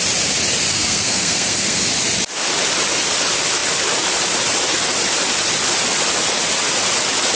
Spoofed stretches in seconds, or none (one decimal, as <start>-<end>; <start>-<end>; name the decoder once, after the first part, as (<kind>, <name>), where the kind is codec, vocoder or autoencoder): 0.7-1.9 (codec, SNAC)